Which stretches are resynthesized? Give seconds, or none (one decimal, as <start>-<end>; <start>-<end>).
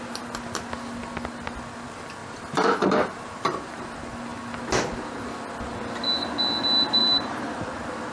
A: 2.2-3.8; 7.0-7.5